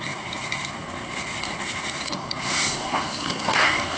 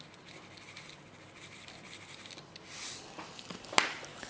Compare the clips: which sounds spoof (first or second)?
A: first